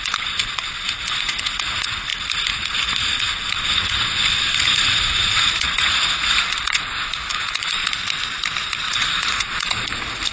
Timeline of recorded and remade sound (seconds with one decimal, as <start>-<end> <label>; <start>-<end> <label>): 0.0-2.1 remade; 2.1-3.0 recorded; 3.0-7.8 remade; 7.8-8.9 recorded; 8.9-10.3 remade